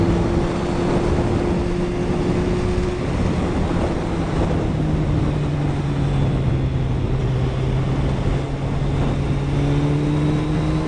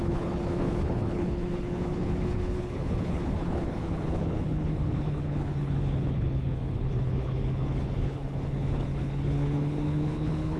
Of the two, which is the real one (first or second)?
first